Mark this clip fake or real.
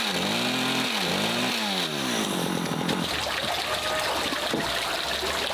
real